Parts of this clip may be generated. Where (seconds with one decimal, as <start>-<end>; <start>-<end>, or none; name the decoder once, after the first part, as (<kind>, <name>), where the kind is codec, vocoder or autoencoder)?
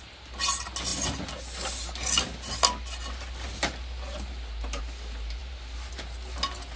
none